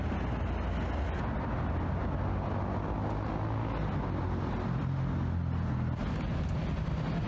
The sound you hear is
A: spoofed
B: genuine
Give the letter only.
B